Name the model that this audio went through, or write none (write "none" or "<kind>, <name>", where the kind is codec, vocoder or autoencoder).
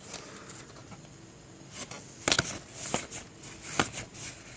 none